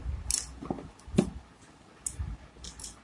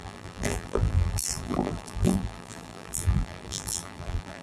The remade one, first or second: second